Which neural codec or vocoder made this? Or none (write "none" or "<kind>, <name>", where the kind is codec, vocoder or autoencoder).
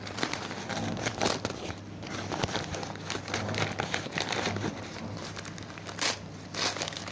none